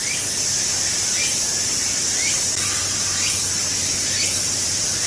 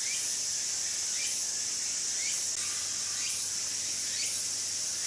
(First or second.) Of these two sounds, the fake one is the first